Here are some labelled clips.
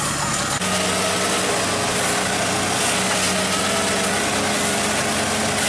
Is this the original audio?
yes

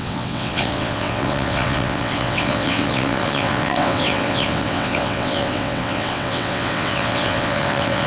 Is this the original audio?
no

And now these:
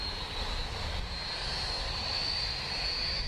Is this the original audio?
yes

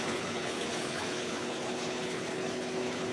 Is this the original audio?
no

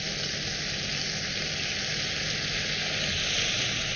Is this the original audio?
yes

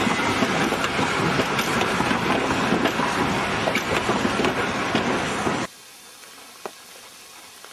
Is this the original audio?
yes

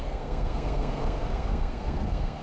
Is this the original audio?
no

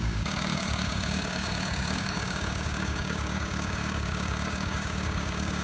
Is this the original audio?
no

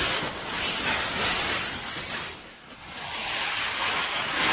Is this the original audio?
yes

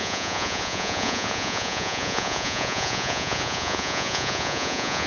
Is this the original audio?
no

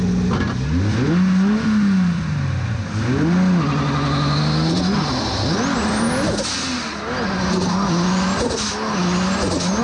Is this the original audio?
yes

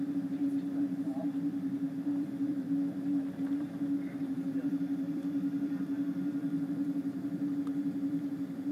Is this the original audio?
no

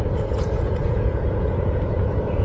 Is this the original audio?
no